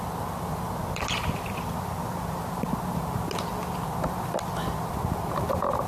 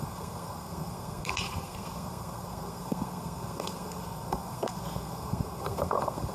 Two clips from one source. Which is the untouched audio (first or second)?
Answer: first